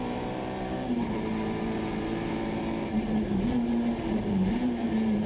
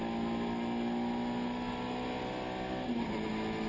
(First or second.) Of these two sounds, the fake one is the first